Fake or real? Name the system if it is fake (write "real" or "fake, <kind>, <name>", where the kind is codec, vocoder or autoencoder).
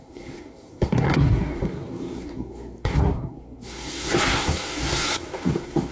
fake, codec, SNAC